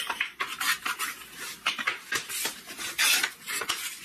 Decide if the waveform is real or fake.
real